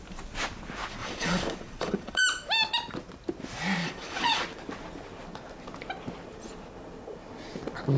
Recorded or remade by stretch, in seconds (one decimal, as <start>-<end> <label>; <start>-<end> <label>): 0.0-1.0 recorded; 1.0-2.2 remade; 2.2-3.8 recorded; 3.8-4.4 remade; 4.4-8.0 recorded